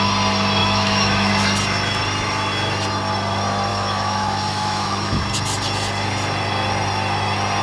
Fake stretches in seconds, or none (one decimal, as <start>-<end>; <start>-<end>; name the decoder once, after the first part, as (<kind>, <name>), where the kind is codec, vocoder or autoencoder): 0.6-1.3 (autoencoder, DAC-VAE); 3.7-5.2